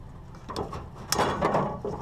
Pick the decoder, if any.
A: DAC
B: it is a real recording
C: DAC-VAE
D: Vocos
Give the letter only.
B